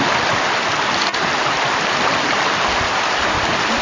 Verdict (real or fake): real